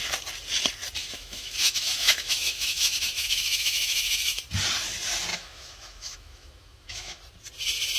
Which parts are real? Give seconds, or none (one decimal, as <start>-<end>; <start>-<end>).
0.0-1.0; 4.4-5.3; 7.2-8.0